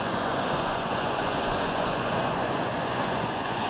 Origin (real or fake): fake